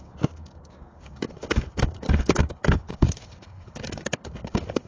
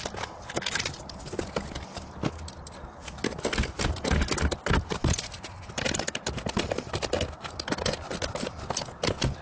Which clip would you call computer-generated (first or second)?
first